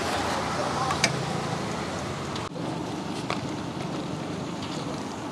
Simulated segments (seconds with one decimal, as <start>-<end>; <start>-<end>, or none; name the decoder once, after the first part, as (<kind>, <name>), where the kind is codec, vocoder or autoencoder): 0.6-1.2 (vocoder, BigVGAN v2); 2.8-5.3